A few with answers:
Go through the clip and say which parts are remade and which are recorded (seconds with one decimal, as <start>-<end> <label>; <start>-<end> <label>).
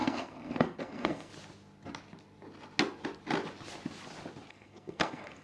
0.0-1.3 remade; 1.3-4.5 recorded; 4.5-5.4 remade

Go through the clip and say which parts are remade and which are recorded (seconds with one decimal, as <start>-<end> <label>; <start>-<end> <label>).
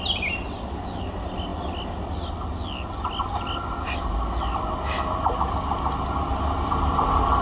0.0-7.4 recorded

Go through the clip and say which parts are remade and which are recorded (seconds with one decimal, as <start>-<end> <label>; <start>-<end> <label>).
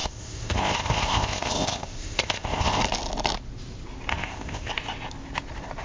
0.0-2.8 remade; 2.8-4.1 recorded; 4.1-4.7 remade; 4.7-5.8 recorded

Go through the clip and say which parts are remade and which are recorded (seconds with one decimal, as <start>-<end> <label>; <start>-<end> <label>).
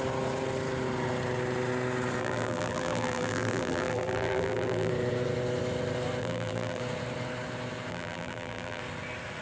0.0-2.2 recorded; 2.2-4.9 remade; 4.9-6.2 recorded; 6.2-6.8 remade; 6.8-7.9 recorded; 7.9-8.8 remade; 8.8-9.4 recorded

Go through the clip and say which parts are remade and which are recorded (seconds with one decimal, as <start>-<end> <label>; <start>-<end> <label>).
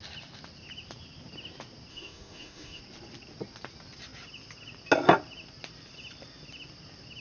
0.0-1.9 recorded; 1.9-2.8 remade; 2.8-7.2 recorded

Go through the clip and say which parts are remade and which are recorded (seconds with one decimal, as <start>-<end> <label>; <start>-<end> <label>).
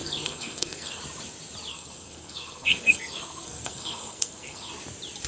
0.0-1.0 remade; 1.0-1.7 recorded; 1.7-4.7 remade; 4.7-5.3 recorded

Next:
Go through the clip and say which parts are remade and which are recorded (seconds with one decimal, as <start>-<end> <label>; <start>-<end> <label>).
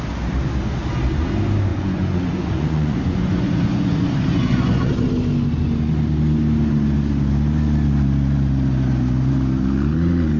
0.0-1.7 recorded; 1.7-5.1 remade; 5.1-10.4 recorded